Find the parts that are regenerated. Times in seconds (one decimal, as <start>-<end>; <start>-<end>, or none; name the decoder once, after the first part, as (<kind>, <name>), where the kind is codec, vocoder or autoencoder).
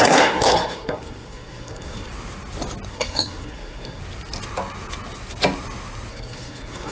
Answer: 0.0-2.1 (codec, SNAC); 2.9-4.0; 6.1-6.9